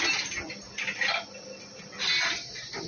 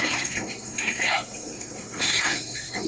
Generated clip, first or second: second